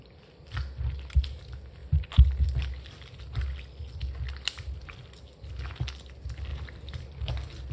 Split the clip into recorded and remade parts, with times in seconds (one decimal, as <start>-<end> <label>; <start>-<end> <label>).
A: 0.0-6.5 recorded; 6.5-7.3 remade; 7.3-7.7 recorded